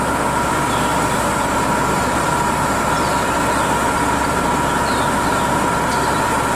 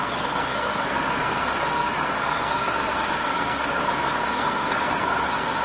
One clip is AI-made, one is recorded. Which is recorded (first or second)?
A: first